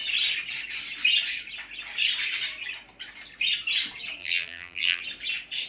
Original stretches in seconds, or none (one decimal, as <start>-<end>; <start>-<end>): 0.0-4.2; 5.0-5.7